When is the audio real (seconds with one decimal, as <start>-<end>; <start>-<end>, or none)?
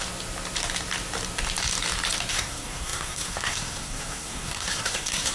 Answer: 0.0-2.3